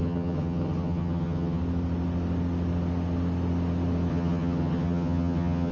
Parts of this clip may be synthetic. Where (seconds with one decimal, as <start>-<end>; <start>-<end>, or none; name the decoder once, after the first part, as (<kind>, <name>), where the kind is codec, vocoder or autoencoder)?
0.0-1.6 (vocoder, HiFi-GAN); 4.1-5.7